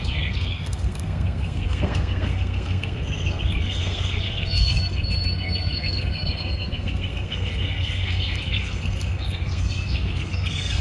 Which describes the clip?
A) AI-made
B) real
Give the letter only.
A